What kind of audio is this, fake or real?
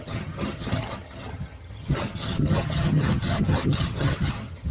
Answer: fake